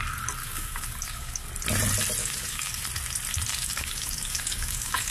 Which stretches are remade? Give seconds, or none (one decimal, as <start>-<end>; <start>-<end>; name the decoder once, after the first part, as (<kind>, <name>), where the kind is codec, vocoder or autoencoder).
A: 0.4-1.5 (codec, DAC); 2.2-2.8; 3.5-5.1